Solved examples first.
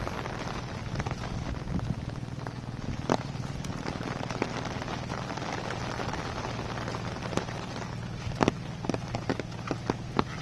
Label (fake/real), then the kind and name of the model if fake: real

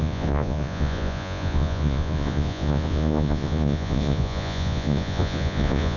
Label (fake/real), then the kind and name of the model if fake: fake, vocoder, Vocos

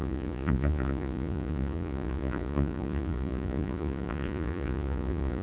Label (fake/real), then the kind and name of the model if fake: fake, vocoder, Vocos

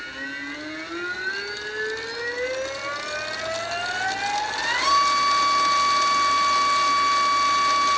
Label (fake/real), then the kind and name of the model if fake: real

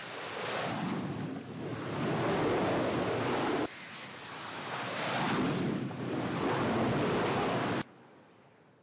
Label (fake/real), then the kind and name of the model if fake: real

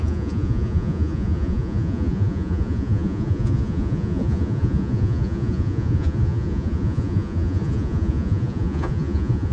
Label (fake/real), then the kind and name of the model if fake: fake, vocoder, Vocos